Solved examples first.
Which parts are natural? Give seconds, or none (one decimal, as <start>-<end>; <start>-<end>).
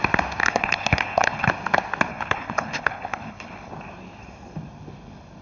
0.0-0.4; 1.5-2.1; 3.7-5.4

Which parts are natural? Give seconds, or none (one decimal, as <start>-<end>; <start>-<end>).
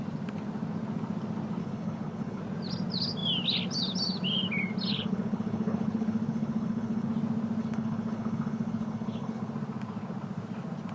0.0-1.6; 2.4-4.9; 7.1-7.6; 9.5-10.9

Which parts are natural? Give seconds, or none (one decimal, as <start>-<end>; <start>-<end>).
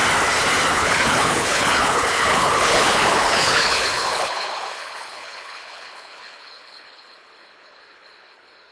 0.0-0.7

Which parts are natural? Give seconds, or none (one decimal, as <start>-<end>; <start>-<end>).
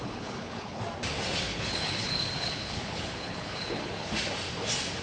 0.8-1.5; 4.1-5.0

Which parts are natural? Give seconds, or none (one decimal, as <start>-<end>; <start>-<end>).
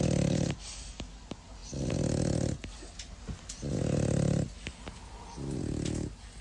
0.0-6.4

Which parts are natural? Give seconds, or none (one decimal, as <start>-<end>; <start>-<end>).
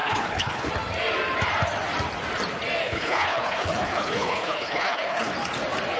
0.7-2.8; 5.3-6.0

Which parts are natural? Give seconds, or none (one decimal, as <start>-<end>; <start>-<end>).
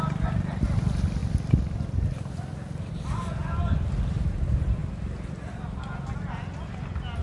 0.0-7.2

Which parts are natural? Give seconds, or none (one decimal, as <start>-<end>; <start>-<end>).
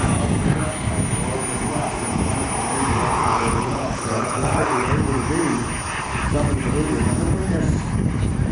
0.0-3.2; 4.9-8.5